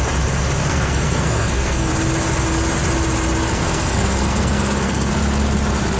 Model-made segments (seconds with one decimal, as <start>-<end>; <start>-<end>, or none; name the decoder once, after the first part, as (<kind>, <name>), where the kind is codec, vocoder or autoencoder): 0.6-1.9 (codec, SNAC); 3.5-5.1